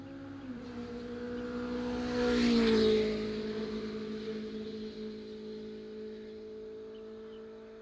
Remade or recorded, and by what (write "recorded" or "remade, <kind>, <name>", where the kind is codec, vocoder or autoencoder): recorded